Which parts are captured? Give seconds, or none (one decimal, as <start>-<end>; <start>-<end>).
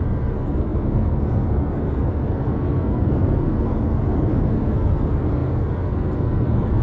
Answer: none